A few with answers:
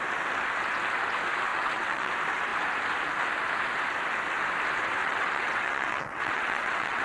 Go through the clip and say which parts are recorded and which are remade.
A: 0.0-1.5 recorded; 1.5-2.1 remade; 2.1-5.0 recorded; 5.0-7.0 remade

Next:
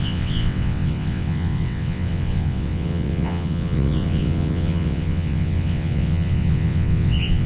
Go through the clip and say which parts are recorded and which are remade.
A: 0.0-7.5 remade

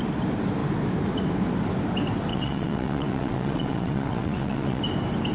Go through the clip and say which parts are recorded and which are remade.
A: 0.0-2.3 recorded; 2.3-4.8 remade; 4.8-5.3 recorded

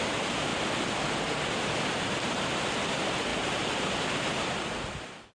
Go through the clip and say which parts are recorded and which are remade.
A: 0.0-5.4 recorded

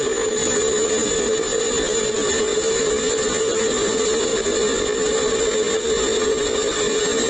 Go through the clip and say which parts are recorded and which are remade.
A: 0.0-7.3 recorded

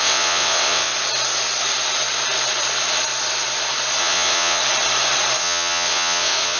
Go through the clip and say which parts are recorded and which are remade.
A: 0.0-0.9 remade; 0.9-4.0 recorded; 4.0-4.6 remade; 4.6-5.4 recorded; 5.4-6.6 remade

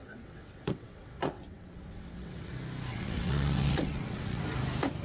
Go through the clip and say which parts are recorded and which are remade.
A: 0.0-2.5 remade; 2.5-2.9 recorded; 2.9-4.4 remade; 4.4-5.0 recorded